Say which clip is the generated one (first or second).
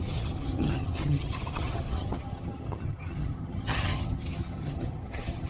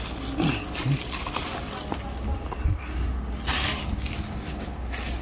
first